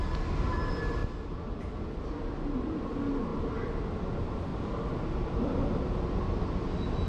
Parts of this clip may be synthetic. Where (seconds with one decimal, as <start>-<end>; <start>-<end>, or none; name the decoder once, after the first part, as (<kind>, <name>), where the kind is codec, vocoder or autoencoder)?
none

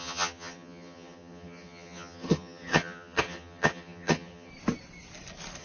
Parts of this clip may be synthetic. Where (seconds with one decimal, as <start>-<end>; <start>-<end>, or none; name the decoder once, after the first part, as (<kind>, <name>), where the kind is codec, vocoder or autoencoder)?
0.0-4.5 (vocoder, HiFi-GAN)

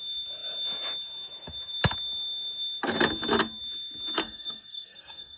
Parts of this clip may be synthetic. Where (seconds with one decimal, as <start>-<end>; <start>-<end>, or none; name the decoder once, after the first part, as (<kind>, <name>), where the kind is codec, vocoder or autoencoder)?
4.2-5.4 (codec, SNAC)

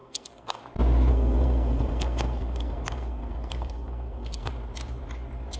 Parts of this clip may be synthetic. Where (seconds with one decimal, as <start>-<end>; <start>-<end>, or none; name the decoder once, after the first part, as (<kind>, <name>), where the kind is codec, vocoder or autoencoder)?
0.0-0.6 (codec, SNAC); 1.1-4.5

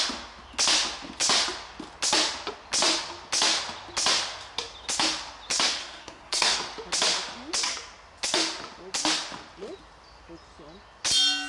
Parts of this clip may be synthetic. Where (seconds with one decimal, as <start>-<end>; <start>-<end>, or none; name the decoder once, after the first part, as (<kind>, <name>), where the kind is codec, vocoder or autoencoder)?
5.8-6.6 (codec, SNAC)

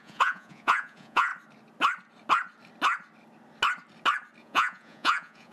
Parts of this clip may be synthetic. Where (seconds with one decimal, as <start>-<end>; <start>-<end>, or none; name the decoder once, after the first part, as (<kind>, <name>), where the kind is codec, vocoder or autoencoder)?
0.0-1.3 (vocoder, Vocos); 4.4-5.5

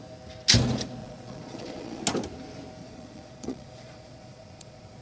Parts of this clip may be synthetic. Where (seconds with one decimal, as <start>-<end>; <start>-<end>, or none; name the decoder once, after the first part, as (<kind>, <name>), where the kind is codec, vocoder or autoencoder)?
1.0-2.0 (vocoder, Vocos); 2.8-5.0